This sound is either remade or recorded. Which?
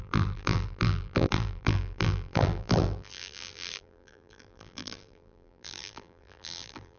remade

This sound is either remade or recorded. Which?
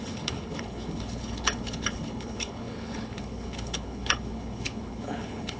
remade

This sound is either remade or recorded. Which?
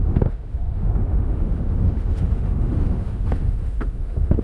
remade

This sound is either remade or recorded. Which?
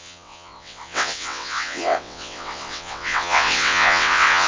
remade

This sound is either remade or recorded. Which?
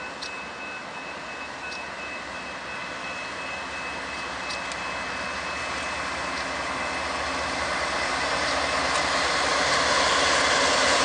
recorded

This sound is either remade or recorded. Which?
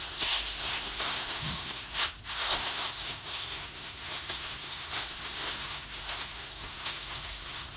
remade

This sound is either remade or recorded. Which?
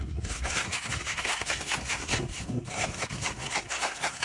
remade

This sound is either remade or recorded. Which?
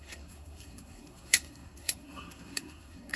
remade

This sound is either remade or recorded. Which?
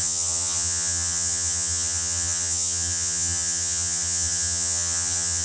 remade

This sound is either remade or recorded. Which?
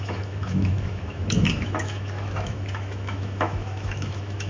remade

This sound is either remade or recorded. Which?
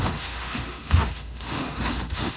remade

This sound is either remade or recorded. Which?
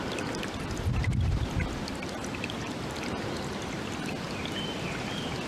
recorded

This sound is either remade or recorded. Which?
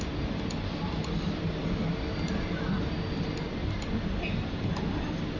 recorded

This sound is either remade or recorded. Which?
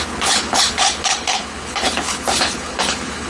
remade